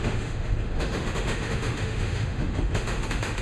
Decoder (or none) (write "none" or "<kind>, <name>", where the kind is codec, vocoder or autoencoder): autoencoder, DAC-VAE